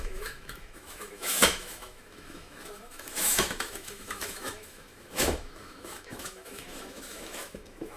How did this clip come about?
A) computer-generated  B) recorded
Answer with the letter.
A